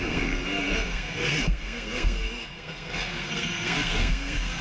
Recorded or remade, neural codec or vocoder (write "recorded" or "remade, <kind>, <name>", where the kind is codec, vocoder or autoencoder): remade, codec, SNAC